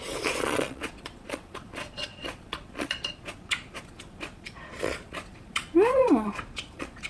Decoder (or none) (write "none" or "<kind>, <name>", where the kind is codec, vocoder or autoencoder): vocoder, Vocos